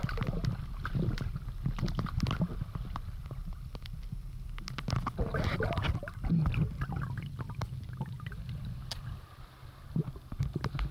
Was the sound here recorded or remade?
recorded